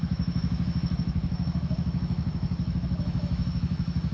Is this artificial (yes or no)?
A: yes